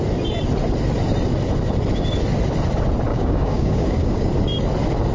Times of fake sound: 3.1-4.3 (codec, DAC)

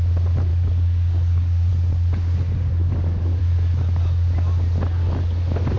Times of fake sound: 0.5-1.7 (codec, DAC); 2.7-3.4

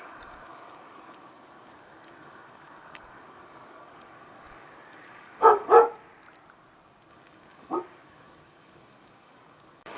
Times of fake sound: 0.0-5.8 (codec, DAC); 7.1-10.0

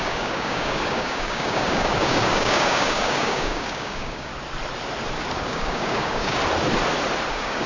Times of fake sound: 0.0-4.3 (codec, DAC); 5.4-6.4; 7.3-7.7

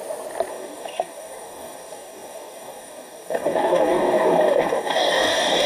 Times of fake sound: 0.5-5.7 (codec, DAC)

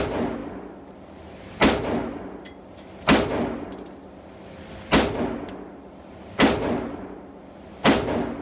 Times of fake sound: none

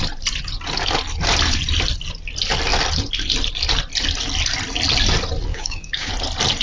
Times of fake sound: 5.5-6.1 (codec, DAC)

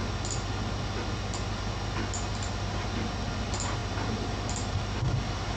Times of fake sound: none